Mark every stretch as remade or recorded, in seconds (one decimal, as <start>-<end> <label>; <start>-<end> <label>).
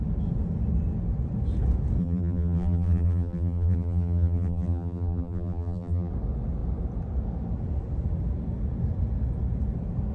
0.0-2.0 recorded; 2.0-6.1 remade; 6.1-10.1 recorded